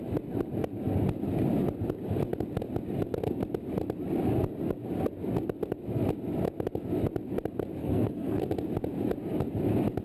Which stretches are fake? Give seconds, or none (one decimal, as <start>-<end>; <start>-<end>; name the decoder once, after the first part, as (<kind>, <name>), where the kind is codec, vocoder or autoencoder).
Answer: 7.8-8.4 (codec, SNAC)